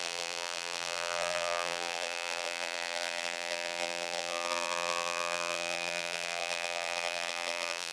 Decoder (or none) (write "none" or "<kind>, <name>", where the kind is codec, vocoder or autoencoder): vocoder, BigVGAN v2